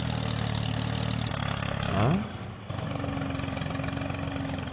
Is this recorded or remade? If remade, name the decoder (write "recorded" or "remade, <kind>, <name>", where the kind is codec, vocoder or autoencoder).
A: recorded